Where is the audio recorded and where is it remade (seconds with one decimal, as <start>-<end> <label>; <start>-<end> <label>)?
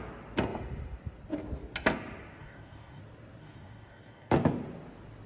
0.0-2.4 recorded; 2.4-3.0 remade; 3.0-3.4 recorded; 3.4-4.3 remade; 4.3-5.3 recorded